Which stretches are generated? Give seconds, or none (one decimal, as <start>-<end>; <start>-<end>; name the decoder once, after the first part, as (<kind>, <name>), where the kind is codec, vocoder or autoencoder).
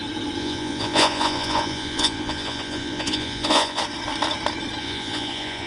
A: 0.4-3.8 (vocoder, Vocos); 4.8-5.7